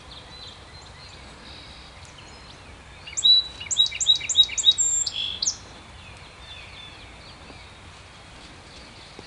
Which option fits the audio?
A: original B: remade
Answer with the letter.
A